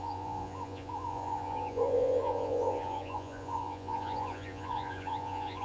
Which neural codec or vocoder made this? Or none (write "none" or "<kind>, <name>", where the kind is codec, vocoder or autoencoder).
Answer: vocoder, Vocos